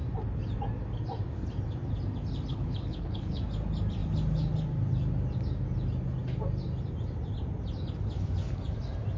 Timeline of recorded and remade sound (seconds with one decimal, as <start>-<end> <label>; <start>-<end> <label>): 0.0-2.5 recorded; 2.5-3.4 remade; 3.4-9.2 recorded